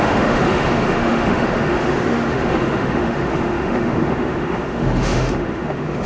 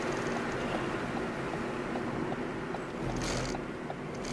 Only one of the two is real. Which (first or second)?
second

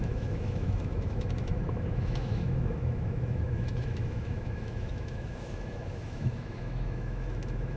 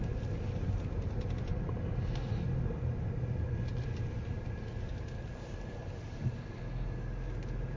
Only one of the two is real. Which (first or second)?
second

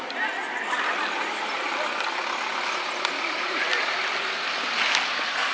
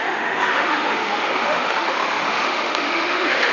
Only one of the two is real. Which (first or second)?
first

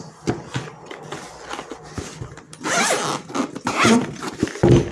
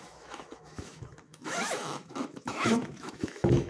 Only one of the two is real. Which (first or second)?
first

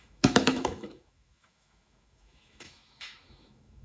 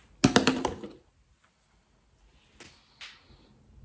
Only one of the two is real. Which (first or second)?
second